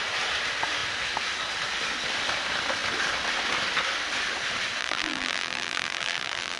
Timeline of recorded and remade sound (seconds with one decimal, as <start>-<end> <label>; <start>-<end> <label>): 0.0-4.8 recorded; 4.8-6.6 remade